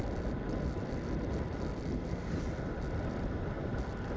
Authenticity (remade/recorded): recorded